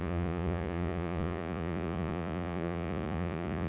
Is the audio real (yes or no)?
no